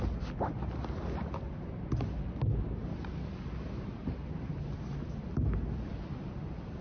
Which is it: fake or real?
real